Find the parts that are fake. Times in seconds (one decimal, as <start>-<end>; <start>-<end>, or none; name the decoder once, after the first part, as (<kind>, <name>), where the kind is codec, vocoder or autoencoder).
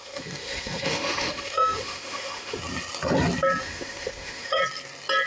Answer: 0.0-2.6 (autoencoder, DAC-VAE); 3.6-4.6